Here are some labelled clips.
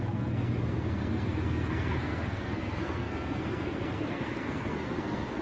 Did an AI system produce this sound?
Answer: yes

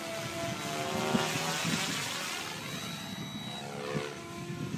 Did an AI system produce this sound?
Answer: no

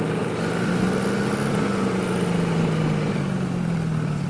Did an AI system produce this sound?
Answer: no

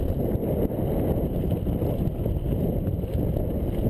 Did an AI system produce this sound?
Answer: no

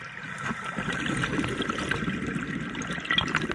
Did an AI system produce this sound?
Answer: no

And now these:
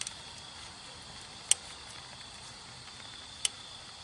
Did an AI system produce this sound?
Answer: no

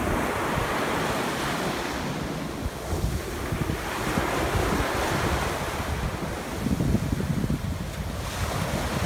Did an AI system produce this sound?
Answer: no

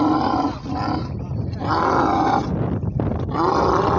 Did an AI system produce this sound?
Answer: no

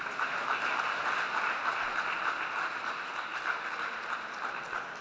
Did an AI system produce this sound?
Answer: no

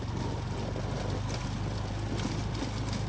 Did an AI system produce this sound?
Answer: no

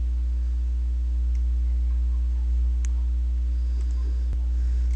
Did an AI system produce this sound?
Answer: no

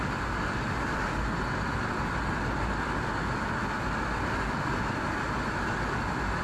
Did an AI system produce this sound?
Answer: no